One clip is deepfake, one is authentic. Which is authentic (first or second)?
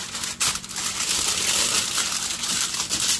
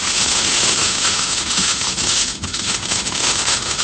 first